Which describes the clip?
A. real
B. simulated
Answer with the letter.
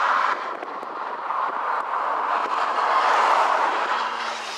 B